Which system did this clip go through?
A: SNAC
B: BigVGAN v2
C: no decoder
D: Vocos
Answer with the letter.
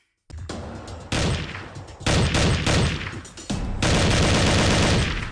C